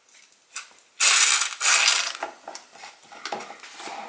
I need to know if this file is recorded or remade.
recorded